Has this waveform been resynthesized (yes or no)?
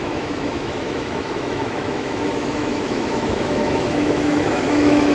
yes